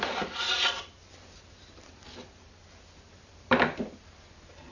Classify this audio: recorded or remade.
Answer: recorded